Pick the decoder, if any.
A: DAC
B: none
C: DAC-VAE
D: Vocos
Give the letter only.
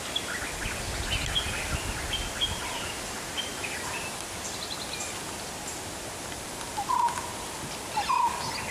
B